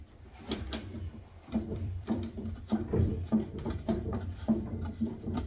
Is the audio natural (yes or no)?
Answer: no